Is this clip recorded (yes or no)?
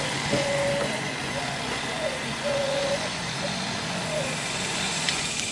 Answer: no